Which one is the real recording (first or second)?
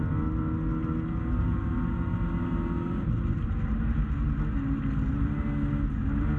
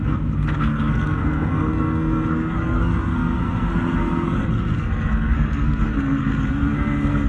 first